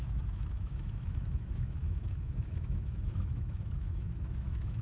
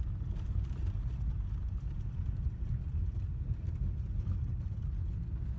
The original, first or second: second